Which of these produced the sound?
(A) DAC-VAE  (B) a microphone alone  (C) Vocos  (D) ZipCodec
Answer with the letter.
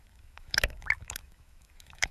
A